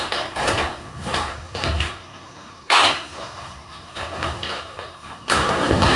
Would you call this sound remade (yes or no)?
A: yes